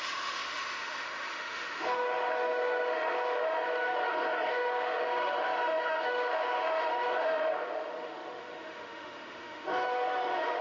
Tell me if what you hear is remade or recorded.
remade